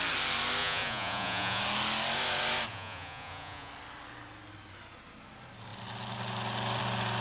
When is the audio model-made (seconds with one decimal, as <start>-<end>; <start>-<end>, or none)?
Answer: 0.6-1.6; 2.7-3.7